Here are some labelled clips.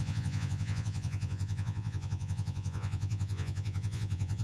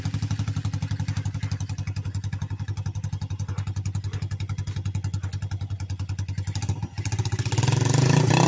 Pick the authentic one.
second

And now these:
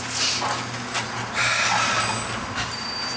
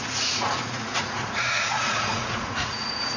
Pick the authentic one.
first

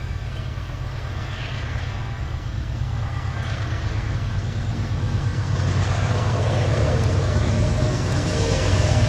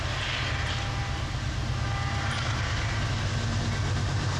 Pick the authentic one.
second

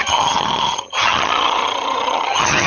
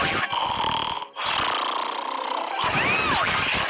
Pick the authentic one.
second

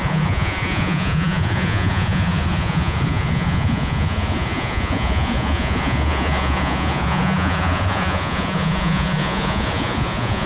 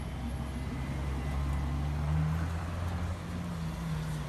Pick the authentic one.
second